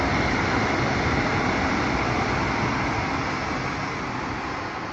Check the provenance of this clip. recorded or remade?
recorded